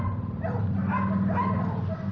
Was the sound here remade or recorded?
recorded